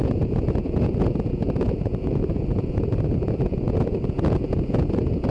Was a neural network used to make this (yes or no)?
yes